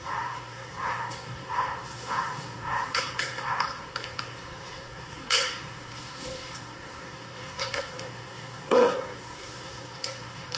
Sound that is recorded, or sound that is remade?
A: remade